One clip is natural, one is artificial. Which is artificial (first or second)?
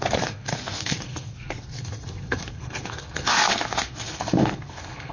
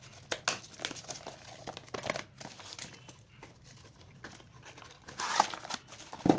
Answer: first